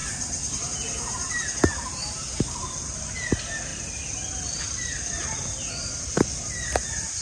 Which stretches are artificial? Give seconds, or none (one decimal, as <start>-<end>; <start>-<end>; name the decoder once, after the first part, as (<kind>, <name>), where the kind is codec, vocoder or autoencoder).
none